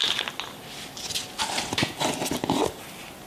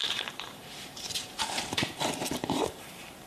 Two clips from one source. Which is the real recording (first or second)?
first